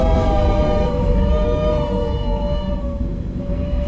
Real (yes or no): no